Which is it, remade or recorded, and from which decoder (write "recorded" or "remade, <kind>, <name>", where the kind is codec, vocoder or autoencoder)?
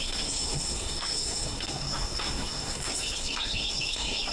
remade, codec, SNAC